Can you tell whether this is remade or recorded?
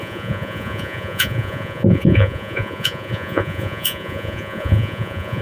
remade